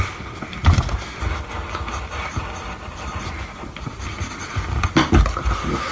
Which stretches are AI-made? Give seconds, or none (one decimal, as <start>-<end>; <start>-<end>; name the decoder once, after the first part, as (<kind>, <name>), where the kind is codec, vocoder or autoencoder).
none